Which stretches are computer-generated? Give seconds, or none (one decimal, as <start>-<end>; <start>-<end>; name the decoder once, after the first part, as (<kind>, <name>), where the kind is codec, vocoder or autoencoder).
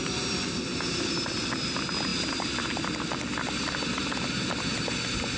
none